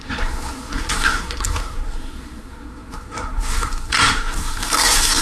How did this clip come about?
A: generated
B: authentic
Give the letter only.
A